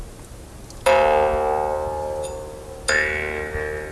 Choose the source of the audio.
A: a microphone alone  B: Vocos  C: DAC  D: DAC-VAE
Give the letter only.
A